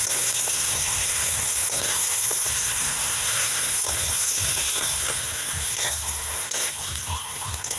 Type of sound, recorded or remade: remade